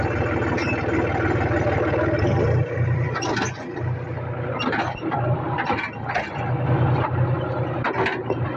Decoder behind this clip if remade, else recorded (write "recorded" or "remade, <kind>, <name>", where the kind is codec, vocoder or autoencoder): recorded